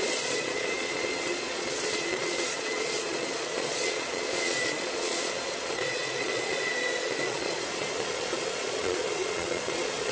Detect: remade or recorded remade